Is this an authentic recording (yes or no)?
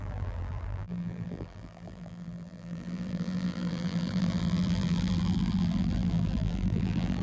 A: no